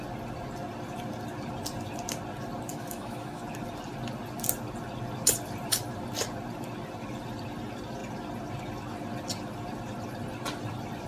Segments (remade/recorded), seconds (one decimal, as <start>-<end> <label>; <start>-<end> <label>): 0.0-2.7 recorded; 2.7-3.4 remade; 3.4-11.1 recorded